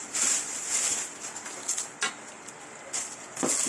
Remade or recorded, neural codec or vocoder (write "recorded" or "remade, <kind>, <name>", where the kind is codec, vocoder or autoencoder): recorded